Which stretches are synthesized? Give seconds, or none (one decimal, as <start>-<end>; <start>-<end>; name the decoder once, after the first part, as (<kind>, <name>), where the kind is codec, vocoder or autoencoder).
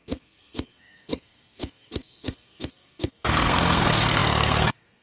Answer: 0.0-5.0 (codec, SNAC)